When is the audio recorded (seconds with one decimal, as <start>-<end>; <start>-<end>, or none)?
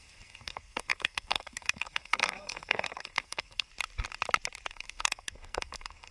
3.7-4.7